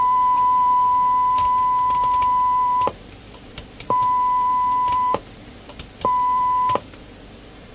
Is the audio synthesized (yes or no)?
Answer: yes